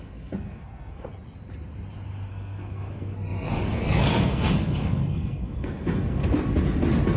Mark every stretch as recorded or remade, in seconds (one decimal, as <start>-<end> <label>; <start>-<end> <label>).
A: 0.0-1.1 remade; 1.1-2.3 recorded; 2.3-6.2 remade; 6.2-7.2 recorded